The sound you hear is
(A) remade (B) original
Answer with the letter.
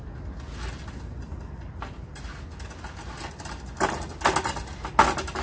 B